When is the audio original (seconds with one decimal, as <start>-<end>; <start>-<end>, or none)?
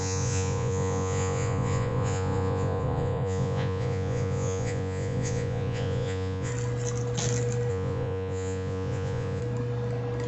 6.5-7.7; 9.4-10.3